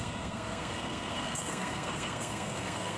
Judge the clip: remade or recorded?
remade